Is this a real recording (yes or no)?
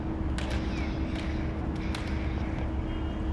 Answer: yes